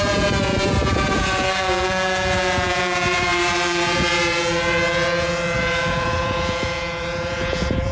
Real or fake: fake